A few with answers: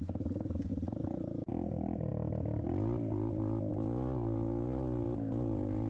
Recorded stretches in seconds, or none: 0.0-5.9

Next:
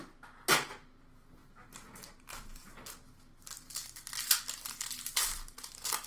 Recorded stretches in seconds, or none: 0.0-6.1

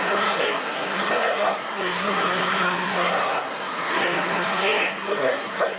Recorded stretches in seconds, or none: none

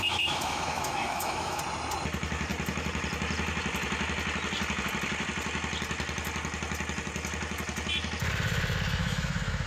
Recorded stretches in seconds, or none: 1.6-9.0

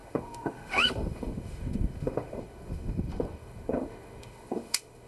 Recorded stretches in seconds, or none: none

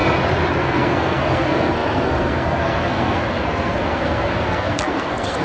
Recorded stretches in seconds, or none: 0.0-0.6

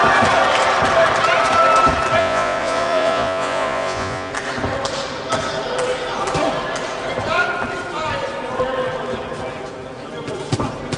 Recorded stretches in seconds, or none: 0.0-2.2; 4.3-11.0